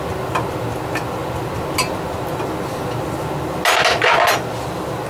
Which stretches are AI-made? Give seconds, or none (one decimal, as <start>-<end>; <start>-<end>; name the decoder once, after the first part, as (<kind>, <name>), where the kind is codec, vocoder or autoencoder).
none